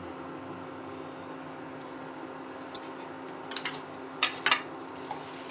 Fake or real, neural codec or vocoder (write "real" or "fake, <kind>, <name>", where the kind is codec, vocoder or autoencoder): real